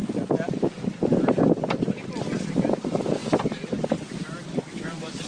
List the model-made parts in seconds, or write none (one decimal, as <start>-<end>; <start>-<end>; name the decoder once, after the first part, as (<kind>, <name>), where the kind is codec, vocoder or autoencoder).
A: 0.0-5.3 (vocoder, BigVGAN v2)